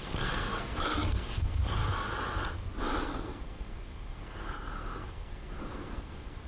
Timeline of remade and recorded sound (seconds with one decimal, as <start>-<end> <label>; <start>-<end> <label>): 0.0-1.8 remade; 1.8-3.0 recorded; 3.0-6.5 remade